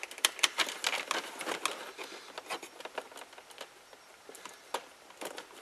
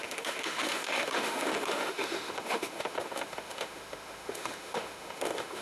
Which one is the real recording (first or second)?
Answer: first